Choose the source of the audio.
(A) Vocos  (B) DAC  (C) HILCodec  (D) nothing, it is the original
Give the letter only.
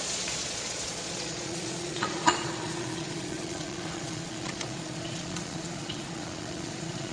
A